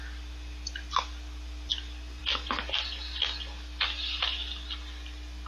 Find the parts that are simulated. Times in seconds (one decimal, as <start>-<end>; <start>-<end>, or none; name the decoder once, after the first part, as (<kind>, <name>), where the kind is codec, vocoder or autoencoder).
none

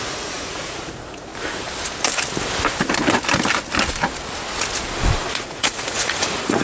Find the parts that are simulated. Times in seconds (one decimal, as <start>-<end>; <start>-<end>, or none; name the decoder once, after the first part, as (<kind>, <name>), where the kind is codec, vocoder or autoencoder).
0.0-1.3 (vocoder, Vocos); 5.3-6.6

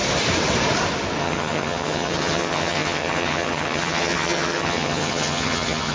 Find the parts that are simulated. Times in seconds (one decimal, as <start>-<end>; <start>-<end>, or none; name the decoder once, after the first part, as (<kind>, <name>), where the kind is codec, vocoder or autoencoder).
1.2-5.9 (vocoder, HiFi-GAN)

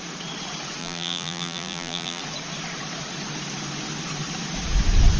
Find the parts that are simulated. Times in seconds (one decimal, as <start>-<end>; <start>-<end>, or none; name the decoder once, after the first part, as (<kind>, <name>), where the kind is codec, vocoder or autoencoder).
0.8-2.2 (vocoder, BigVGAN v2)

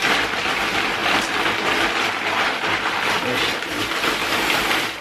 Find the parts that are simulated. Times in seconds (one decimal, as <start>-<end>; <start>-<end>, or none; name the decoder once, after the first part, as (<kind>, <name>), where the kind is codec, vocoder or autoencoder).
0.0-5.0 (vocoder, BigVGAN v2)

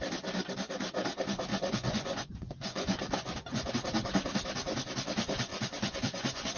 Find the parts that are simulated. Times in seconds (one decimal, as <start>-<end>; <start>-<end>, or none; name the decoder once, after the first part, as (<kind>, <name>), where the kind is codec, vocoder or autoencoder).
1.5-3.7 (vocoder, Vocos); 5.5-6.6

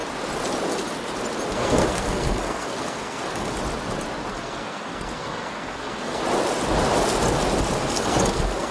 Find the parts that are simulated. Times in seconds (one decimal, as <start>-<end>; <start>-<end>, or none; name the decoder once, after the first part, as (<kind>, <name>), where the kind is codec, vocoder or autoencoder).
1.5-3.6 (codec, SNAC); 4.3-6.2; 7.8-8.7